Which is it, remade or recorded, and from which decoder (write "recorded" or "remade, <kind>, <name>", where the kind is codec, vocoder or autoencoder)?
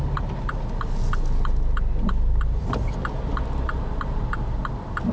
recorded